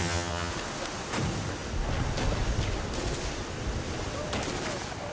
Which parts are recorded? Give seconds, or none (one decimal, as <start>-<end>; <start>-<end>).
0.5-5.1